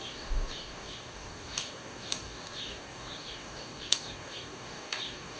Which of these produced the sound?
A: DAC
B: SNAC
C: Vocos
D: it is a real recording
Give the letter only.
A